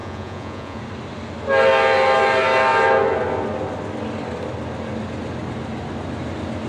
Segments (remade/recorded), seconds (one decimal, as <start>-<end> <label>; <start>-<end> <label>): 0.0-0.8 remade; 0.8-6.7 recorded